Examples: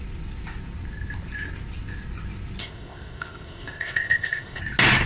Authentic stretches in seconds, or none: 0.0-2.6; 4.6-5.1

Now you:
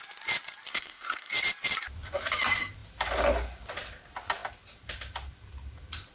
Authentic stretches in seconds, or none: 0.0-0.7; 1.3-6.1

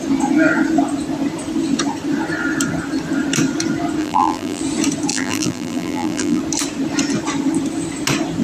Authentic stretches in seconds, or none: 0.0-4.0; 4.6-5.1; 6.4-8.4

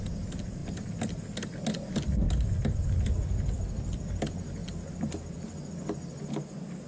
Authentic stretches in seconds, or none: 0.0-6.9

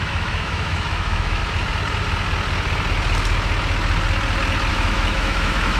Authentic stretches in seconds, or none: 1.4-4.7

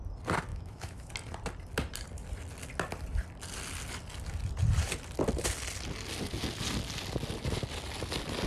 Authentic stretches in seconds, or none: 0.0-0.5; 1.1-8.5

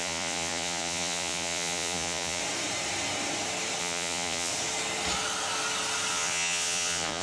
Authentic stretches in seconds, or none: 2.4-3.8; 4.5-6.1

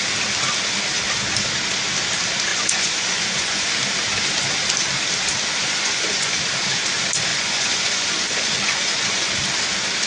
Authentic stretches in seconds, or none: 0.0-2.5; 3.7-5.5; 6.4-7.3; 9.3-10.1